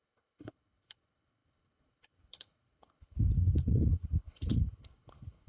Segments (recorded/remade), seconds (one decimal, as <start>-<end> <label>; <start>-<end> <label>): 0.0-5.5 remade